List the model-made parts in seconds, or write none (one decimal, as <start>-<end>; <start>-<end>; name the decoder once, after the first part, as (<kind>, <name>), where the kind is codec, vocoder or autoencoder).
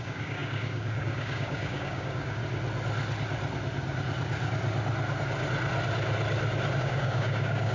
0.0-2.4 (codec, DAC); 6.8-7.7